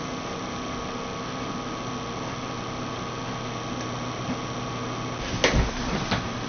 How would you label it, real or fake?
real